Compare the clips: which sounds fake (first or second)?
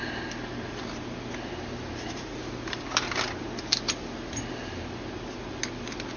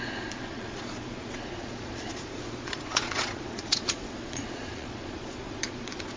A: second